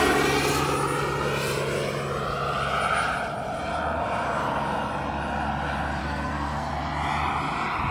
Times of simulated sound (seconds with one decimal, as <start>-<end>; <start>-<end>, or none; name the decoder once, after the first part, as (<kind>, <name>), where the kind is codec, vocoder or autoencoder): 6.0-6.7 (codec, SNAC)